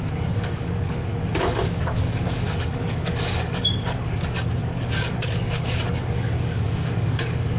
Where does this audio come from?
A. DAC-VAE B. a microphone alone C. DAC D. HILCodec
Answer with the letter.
C